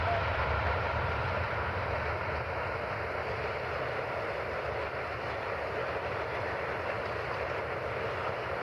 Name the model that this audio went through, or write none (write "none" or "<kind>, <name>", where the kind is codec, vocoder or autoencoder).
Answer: none